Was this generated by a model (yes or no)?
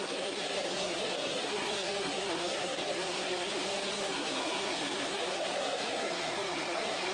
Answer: yes